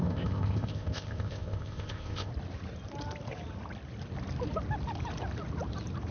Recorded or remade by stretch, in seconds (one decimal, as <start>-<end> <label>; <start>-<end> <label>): 0.0-2.3 remade; 2.3-6.1 recorded